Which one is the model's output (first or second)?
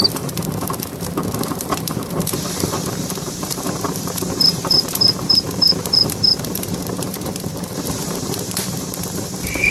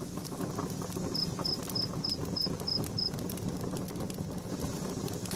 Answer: first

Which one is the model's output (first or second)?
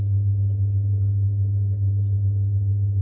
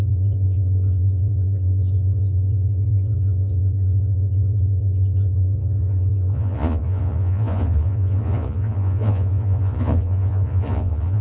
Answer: second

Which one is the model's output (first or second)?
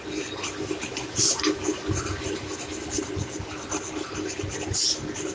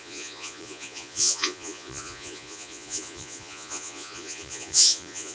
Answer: second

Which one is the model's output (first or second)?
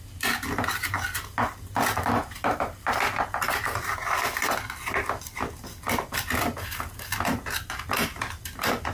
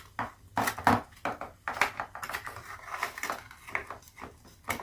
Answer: first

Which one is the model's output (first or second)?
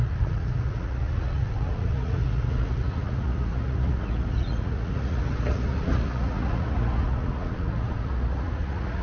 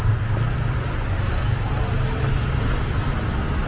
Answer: first